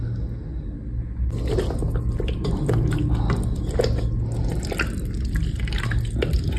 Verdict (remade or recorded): recorded